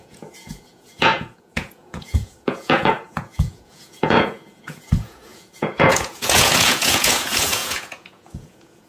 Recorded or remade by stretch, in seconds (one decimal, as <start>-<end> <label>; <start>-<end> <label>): 0.0-8.9 remade